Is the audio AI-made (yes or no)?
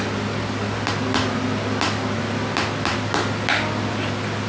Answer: no